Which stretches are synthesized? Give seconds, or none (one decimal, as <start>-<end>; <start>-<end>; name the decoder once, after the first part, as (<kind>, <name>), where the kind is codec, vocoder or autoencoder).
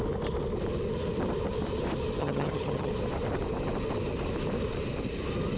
2.2-2.9 (vocoder, HiFi-GAN)